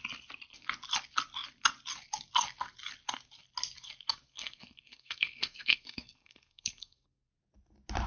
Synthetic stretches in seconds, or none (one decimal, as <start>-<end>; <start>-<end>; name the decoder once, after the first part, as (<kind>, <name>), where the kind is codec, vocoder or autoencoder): 4.3-7.3 (codec, SNAC)